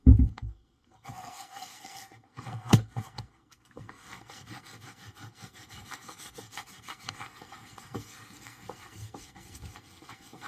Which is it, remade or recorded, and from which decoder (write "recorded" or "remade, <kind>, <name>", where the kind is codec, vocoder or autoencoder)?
remade, codec, SNAC